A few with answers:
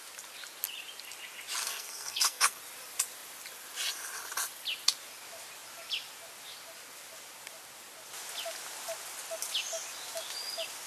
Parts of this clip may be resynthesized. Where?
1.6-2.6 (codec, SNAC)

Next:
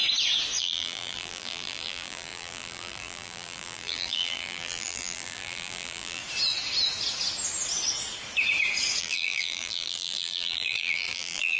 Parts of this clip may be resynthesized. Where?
0.6-6.2 (vocoder, BigVGAN v2); 9.0-11.6